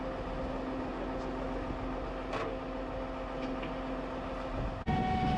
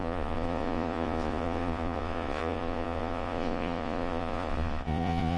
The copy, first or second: second